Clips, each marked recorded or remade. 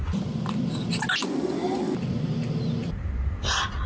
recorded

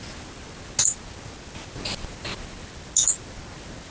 recorded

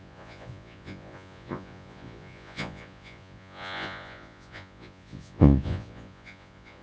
remade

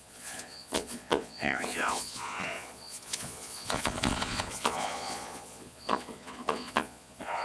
remade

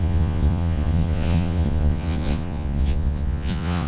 remade